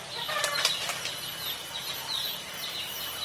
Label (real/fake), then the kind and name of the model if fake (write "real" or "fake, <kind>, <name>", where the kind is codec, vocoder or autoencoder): real